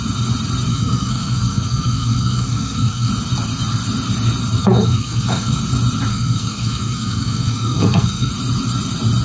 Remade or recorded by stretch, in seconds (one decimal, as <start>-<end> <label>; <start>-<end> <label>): 0.0-0.7 recorded; 0.7-3.1 remade; 3.1-4.6 recorded; 4.6-5.6 remade; 5.6-6.1 recorded; 6.1-8.3 remade; 8.3-9.2 recorded

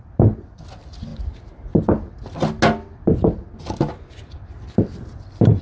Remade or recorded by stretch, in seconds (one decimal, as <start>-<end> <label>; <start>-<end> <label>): 0.0-5.6 recorded

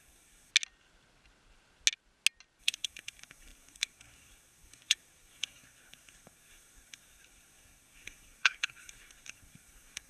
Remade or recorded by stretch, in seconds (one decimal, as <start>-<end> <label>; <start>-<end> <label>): 0.0-0.5 remade; 0.5-2.6 recorded; 2.6-10.1 remade

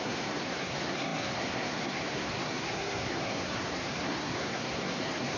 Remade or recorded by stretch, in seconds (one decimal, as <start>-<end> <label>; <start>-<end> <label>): 0.0-5.4 remade

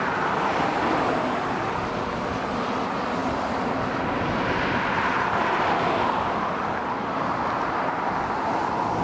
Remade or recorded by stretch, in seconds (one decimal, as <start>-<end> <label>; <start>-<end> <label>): 0.0-9.0 recorded